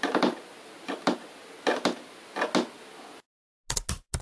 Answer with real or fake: real